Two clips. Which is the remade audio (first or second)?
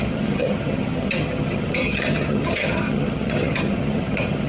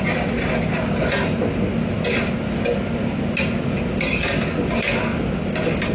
first